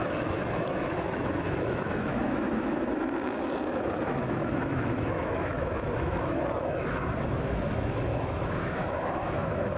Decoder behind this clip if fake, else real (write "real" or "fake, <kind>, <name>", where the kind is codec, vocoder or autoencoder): fake, autoencoder, DAC-VAE